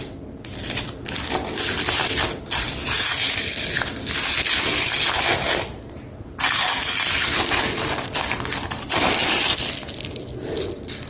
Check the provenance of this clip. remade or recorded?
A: recorded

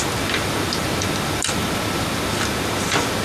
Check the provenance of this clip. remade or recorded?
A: remade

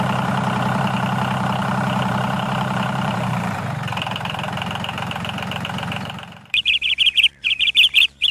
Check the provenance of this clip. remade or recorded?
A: remade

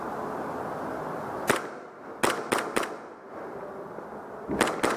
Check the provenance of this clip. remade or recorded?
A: recorded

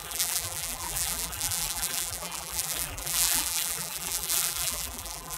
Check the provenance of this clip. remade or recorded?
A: remade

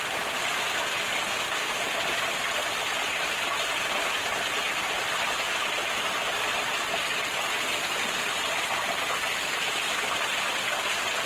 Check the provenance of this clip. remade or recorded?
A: remade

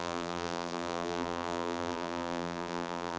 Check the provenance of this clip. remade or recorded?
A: remade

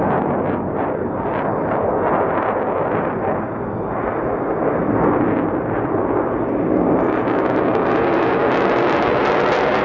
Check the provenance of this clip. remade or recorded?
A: recorded